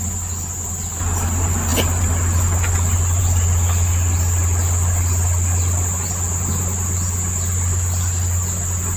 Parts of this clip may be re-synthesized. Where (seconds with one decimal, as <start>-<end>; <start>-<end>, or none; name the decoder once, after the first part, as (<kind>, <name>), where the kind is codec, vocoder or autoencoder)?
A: none